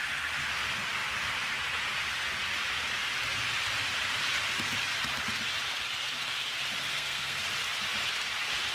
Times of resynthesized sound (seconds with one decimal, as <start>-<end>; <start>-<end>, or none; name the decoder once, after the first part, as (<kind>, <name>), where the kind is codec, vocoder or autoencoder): 6.9-7.4 (codec, SNAC)